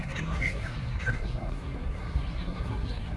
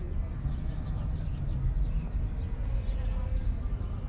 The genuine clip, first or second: second